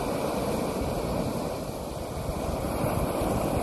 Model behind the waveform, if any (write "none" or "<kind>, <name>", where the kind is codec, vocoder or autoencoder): none